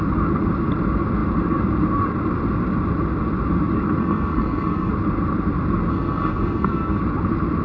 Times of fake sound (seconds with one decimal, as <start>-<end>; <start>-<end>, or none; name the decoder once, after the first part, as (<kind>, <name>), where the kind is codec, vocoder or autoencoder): 4.0-4.9 (codec, SNAC); 5.9-7.0